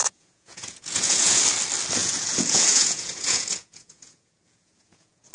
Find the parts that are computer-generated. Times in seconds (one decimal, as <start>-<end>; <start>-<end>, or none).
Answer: 0.0-1.4; 2.0-5.3